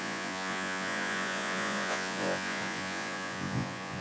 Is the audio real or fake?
fake